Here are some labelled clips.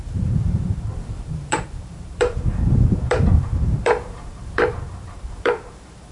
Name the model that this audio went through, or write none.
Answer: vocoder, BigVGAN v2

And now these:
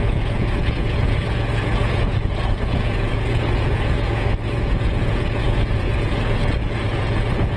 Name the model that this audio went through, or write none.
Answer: vocoder, Vocos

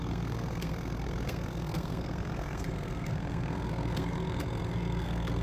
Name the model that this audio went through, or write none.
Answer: codec, SNAC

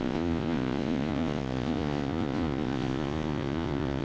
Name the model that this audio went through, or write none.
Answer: vocoder, Vocos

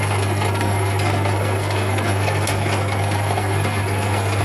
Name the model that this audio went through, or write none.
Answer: codec, SNAC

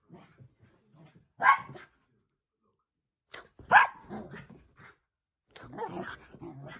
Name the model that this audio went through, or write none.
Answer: none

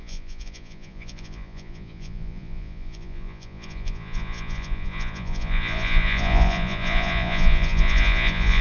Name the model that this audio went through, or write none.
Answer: vocoder, Vocos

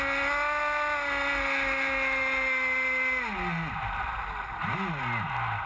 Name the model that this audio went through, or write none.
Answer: none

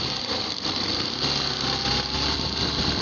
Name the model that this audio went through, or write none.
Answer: none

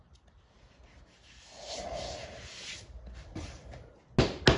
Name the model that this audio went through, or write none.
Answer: none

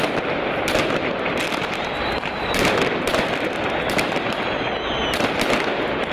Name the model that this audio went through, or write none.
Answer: none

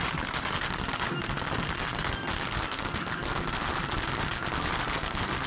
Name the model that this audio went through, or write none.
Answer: none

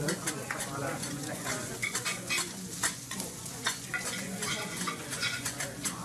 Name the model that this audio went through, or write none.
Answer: vocoder, Vocos